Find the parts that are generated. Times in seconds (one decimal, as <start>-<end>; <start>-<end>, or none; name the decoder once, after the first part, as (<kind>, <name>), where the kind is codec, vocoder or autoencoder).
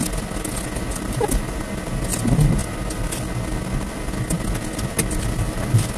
0.9-1.7 (vocoder, BigVGAN v2)